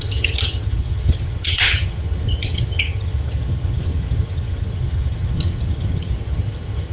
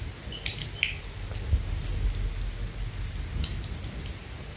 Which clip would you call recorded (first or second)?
second